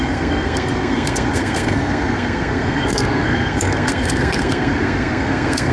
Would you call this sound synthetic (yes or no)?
yes